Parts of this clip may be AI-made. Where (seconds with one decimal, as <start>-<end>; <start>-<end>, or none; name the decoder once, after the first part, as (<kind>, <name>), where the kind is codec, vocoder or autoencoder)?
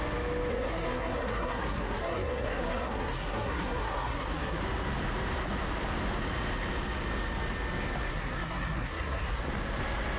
0.5-4.6 (codec, SNAC); 8.1-9.4